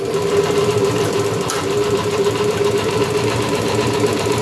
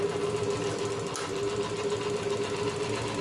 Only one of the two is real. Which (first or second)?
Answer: second